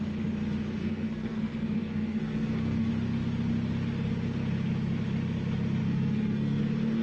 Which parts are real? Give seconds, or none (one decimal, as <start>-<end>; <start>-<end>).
0.0-0.8; 2.9-5.8; 6.6-7.0